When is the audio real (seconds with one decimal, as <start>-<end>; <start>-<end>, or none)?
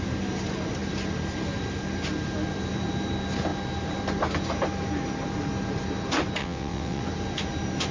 0.0-6.4; 7.0-7.9